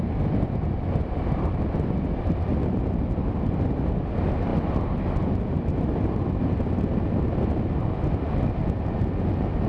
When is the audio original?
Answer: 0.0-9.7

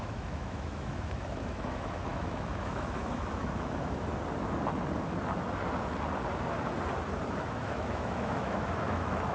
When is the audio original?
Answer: 4.1-7.5